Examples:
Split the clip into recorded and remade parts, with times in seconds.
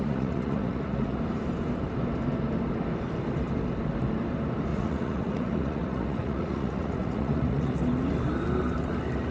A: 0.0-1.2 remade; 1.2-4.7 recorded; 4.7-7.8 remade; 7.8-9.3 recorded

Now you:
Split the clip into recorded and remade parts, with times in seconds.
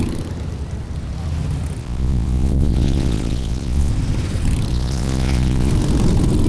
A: 0.0-1.8 recorded; 1.8-3.9 remade; 3.9-4.7 recorded; 4.7-5.7 remade; 5.7-6.5 recorded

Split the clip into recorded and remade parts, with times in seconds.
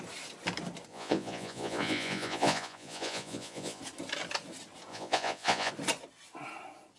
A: 0.0-0.9 recorded; 0.9-3.8 remade; 3.8-4.9 recorded; 4.9-5.7 remade; 5.7-7.0 recorded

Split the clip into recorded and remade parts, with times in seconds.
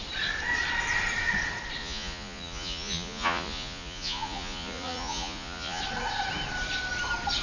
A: 0.0-1.8 recorded; 1.8-5.8 remade; 5.8-7.4 recorded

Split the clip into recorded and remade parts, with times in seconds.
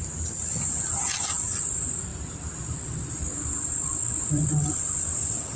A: 0.0-5.6 recorded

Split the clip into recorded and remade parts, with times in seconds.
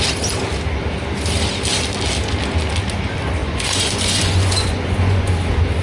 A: 0.0-3.4 recorded; 3.4-5.3 remade; 5.3-5.8 recorded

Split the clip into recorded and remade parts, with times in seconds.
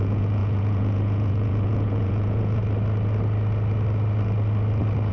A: 0.0-2.6 remade; 2.6-5.1 recorded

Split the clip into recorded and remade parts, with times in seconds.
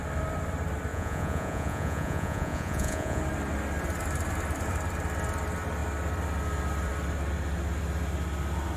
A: 0.0-0.9 recorded; 0.9-3.2 remade; 3.2-8.8 recorded